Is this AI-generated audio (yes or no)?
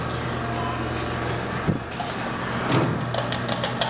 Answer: no